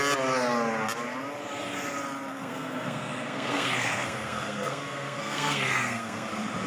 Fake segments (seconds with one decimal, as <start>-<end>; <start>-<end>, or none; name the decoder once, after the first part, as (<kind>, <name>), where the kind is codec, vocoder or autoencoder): 2.3-6.3 (codec, SNAC)